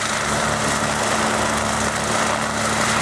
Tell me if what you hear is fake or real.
real